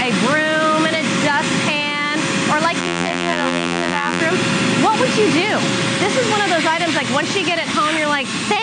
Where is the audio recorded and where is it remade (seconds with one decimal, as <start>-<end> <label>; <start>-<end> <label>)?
0.0-2.8 recorded; 2.8-4.2 remade; 4.2-8.6 recorded

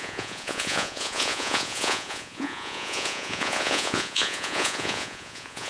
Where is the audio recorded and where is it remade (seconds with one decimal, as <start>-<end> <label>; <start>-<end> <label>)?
0.0-5.7 remade